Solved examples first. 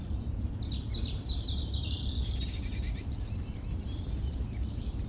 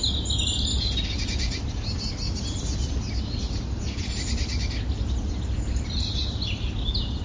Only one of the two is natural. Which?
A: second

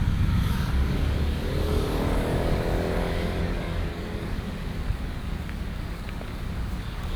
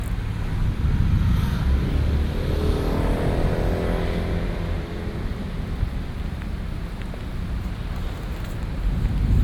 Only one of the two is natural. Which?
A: second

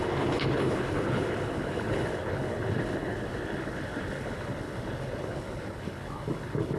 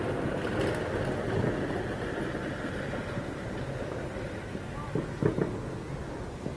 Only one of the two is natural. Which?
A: second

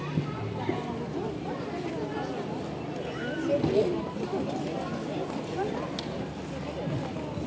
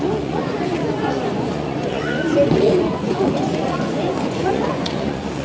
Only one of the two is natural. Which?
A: first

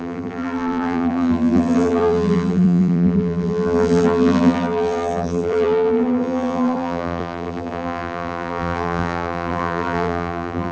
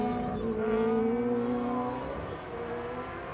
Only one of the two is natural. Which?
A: second